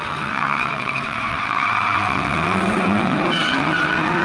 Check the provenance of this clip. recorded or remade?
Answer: remade